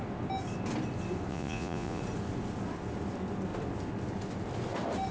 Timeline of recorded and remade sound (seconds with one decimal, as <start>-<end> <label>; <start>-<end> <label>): 0.0-1.3 recorded; 1.3-2.0 remade; 2.0-5.1 recorded